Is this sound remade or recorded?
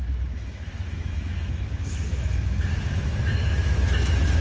remade